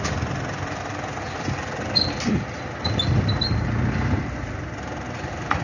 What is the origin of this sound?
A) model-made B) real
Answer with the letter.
B